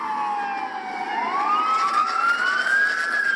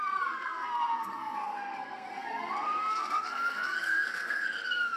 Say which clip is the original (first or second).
first